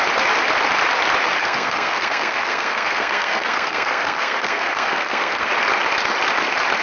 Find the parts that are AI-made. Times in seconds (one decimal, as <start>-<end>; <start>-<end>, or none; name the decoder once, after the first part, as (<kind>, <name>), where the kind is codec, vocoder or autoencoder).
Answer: 1.4-5.5 (codec, SNAC)